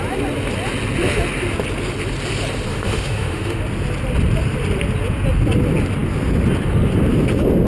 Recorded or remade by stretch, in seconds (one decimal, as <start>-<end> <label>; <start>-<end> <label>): 0.0-2.7 recorded; 2.7-3.6 remade; 3.6-7.7 recorded